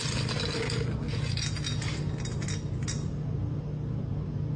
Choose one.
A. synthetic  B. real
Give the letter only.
B